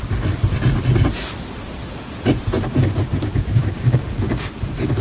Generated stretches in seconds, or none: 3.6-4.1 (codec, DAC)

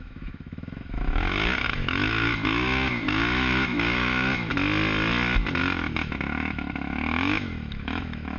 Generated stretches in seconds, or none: 0.0-4.5 (autoencoder, DAC-VAE); 5.6-8.4

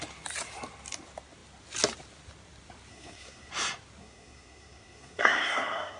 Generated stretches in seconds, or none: 2.9-3.5 (codec, SNAC); 4.0-6.0

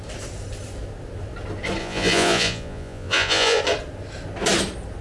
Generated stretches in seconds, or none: 1.8-3.6 (vocoder, Vocos)

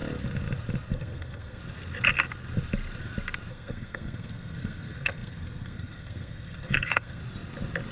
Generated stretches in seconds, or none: 0.9-1.6 (codec, SNAC); 3.5-7.2